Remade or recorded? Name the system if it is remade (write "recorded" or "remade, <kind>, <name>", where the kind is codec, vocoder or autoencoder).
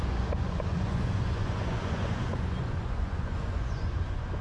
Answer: remade, vocoder, Vocos